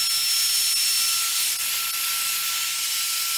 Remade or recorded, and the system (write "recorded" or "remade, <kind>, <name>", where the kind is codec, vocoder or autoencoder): recorded